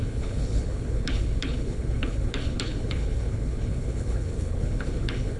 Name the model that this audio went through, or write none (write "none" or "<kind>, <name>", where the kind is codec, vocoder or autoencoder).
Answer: codec, HILCodec